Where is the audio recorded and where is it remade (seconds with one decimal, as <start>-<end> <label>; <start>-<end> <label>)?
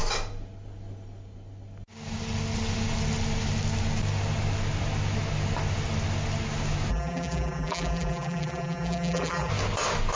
0.0-6.9 recorded; 6.9-9.5 remade; 9.5-10.2 recorded